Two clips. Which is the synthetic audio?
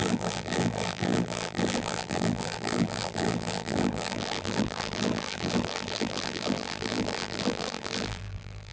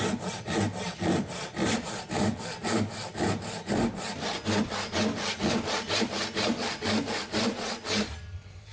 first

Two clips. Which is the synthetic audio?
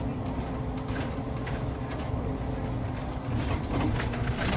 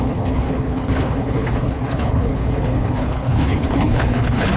second